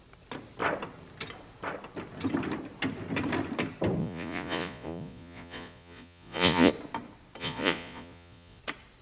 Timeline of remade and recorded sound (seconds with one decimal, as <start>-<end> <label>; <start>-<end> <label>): 0.0-4.0 recorded; 4.0-6.7 remade; 6.7-7.4 recorded; 7.4-8.6 remade; 8.6-9.0 recorded